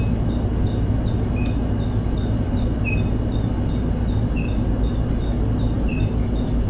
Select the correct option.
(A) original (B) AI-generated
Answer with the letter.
A